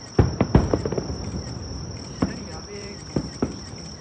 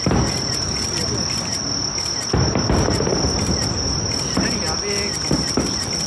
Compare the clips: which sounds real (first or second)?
second